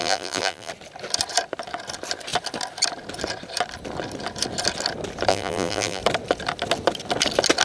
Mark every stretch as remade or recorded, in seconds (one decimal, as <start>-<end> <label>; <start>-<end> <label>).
0.0-0.7 remade; 0.7-5.3 recorded; 5.3-6.0 remade; 6.0-7.6 recorded